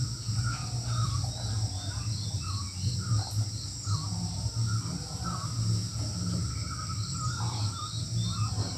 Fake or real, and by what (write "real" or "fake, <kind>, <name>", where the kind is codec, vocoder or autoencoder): real